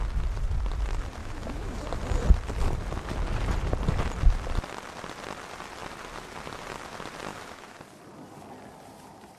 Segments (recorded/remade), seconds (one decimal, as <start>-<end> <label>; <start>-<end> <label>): 0.0-1.2 recorded; 1.2-1.8 remade; 1.8-7.3 recorded; 7.3-7.8 remade; 7.8-9.4 recorded

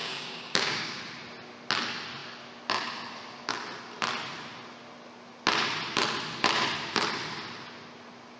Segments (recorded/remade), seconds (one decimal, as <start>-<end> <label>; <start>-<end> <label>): 0.0-1.0 remade; 1.0-8.4 recorded

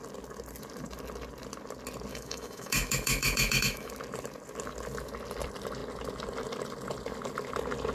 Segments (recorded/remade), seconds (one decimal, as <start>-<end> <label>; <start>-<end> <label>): 0.0-2.1 recorded; 2.1-3.9 remade; 3.9-7.9 recorded